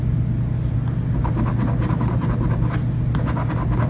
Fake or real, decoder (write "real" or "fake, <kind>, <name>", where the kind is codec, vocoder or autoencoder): real